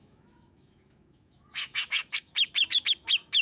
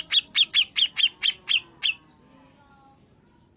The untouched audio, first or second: second